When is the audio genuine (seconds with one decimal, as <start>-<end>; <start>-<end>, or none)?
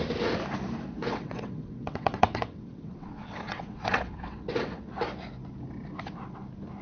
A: 0.0-1.0; 4.9-6.8